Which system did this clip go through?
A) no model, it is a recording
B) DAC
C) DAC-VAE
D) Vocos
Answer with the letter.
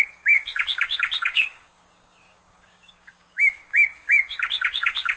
B